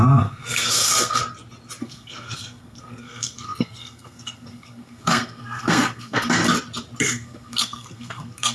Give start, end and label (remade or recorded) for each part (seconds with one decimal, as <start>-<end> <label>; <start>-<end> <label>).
0.0-1.2 remade; 1.2-1.8 recorded; 1.8-6.4 remade; 6.4-7.0 recorded; 7.0-8.5 remade